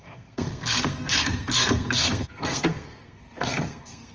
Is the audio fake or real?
fake